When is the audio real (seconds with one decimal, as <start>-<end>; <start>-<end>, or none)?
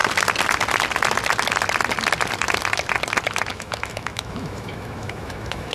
0.0-3.5